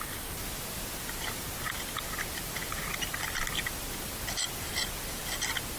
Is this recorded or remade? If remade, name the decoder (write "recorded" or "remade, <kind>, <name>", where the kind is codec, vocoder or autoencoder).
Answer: recorded